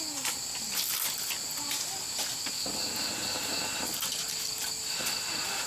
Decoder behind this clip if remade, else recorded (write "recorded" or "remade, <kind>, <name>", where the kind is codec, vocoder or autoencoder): recorded